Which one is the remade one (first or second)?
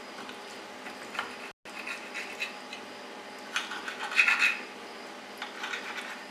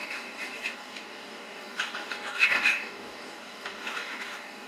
second